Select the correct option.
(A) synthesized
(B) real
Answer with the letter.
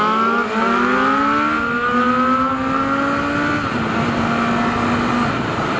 B